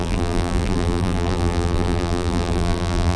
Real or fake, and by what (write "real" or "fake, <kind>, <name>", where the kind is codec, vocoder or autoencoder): fake, vocoder, BigVGAN v2